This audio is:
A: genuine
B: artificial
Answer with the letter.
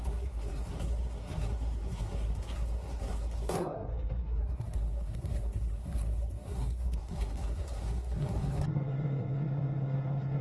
B